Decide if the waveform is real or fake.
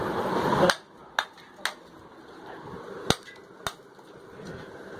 real